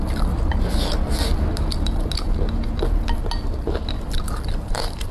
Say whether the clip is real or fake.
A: real